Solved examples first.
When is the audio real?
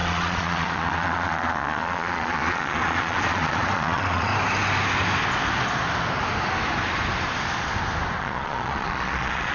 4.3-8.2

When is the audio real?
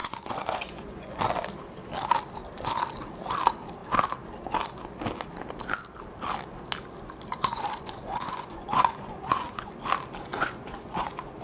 1.2-7.3; 9.8-10.3